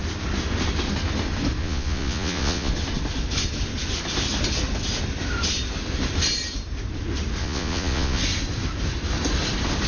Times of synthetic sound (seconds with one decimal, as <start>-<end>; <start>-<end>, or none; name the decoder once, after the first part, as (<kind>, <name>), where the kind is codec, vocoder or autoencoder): 1.6-2.7 (vocoder, Vocos); 7.4-8.2